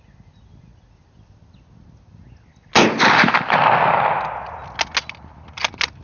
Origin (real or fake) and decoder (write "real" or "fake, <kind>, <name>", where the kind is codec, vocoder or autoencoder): real